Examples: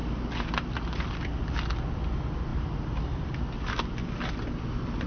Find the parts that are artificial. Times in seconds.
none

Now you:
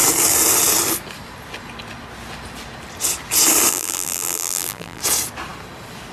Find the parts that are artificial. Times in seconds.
3.7-5.0 (vocoder, BigVGAN v2)

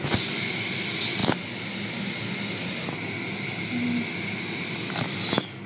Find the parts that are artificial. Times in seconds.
none

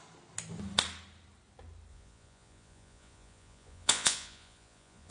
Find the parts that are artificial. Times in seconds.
1.9-5.1 (vocoder, Vocos)

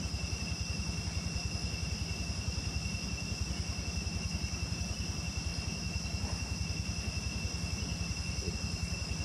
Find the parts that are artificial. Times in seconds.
0.0-1.4 (vocoder, BigVGAN v2); 2.9-9.2

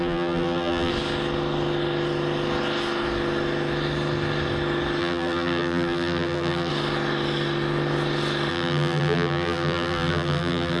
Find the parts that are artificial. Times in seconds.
0.0-0.9 (vocoder, BigVGAN v2); 5.0-6.7; 8.5-10.8

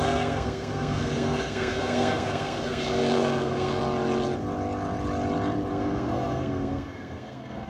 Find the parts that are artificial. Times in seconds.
0.0-3.8 (codec, SNAC); 5.7-7.7